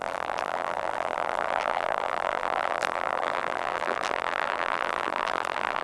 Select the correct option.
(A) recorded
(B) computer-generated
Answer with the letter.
B